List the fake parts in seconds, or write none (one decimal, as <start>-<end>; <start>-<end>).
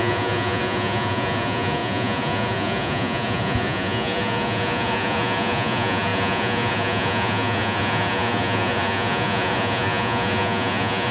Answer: 0.0-11.1